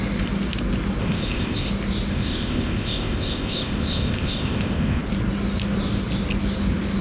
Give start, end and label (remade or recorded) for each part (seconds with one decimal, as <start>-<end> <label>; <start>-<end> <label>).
0.0-1.0 recorded; 1.0-1.7 remade; 1.7-2.1 recorded; 2.1-5.0 remade; 5.0-7.0 recorded